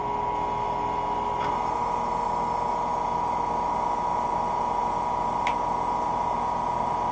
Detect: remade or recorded recorded